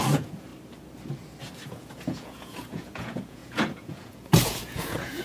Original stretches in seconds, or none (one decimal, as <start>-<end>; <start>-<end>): 0.5-1.7